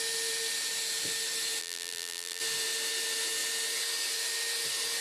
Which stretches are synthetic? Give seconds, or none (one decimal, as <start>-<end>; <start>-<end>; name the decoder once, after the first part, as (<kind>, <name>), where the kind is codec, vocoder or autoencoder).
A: 1.6-2.4 (vocoder, BigVGAN v2)